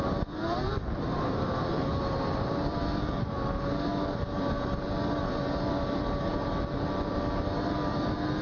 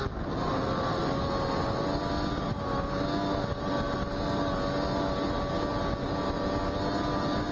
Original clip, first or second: second